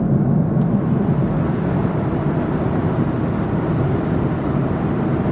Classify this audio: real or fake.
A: real